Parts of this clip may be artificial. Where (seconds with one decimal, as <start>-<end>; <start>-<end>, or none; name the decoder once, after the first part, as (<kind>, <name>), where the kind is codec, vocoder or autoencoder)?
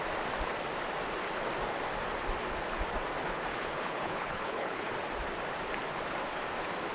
3.5-4.9 (codec, HILCodec)